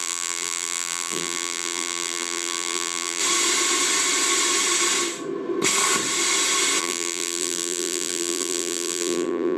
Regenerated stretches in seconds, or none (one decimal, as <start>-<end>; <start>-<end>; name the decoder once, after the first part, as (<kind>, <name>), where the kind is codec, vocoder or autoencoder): 0.0-3.2 (vocoder, BigVGAN v2); 6.8-9.6